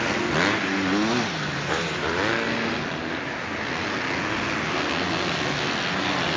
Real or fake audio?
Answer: real